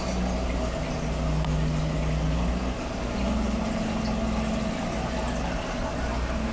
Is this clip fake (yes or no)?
no